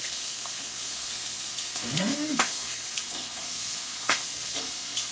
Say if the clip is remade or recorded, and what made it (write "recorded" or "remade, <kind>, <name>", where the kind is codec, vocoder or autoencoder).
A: remade, codec, SNAC